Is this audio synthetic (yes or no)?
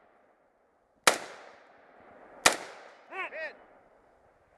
no